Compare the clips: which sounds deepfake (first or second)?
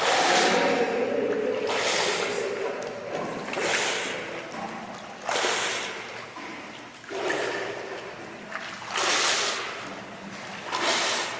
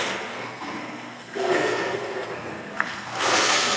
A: second